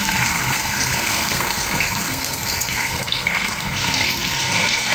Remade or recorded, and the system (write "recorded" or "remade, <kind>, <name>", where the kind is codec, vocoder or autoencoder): remade, codec, SNAC